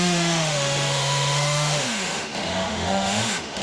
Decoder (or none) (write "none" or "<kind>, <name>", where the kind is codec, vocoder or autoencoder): autoencoder, DAC-VAE